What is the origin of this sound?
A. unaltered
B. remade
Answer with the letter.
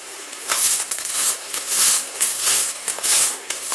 B